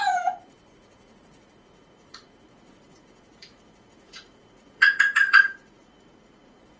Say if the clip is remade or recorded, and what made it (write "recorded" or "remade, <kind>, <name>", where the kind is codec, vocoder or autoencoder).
remade, vocoder, Vocos